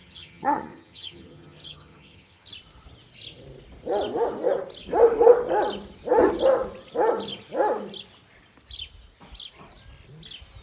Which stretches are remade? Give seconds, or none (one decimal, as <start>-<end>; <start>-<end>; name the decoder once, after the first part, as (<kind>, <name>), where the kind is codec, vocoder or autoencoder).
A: 0.0-2.5 (vocoder, HiFi-GAN)

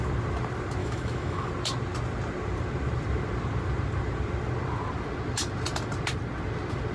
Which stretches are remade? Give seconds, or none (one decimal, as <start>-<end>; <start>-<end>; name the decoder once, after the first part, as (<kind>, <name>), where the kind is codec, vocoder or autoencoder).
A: 0.8-1.5 (autoencoder, DAC-VAE)

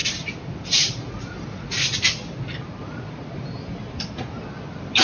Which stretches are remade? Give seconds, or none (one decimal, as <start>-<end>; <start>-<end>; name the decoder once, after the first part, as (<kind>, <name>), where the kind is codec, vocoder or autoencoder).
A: none

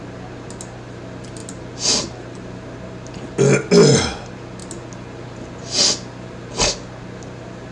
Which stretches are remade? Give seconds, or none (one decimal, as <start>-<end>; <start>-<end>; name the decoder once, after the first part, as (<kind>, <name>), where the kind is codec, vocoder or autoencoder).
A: none

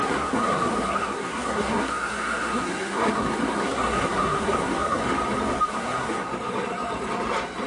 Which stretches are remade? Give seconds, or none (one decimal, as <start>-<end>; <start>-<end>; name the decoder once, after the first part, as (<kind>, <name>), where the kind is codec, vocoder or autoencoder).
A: 0.0-5.0 (codec, SNAC); 5.7-6.3

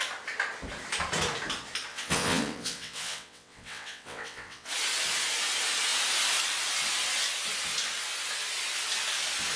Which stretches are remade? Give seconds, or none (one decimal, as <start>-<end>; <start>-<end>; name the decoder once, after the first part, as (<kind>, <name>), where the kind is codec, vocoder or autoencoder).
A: 1.9-4.7 (vocoder, WaveNeXt)

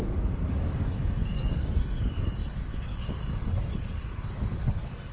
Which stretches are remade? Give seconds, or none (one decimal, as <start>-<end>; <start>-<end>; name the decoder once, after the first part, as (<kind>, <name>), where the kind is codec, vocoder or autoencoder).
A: 0.0-5.1 (codec, DAC)

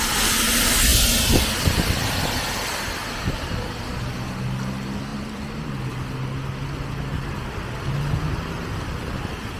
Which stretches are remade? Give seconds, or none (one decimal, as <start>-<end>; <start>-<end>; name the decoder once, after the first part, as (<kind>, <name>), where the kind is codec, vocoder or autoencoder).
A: 5.1-5.7 (vocoder, BigVGAN v2)